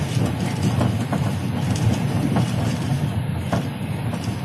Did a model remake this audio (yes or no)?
no